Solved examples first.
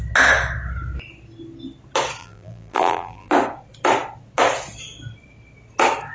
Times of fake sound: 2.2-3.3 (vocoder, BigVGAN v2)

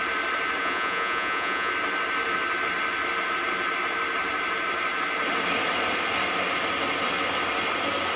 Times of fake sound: 0.6-1.7 (vocoder, Vocos)

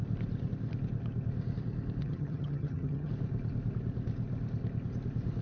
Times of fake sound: 2.0-3.1 (vocoder, HiFi-GAN)

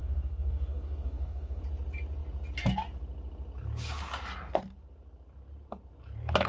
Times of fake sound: 0.0-1.6 (codec, DAC)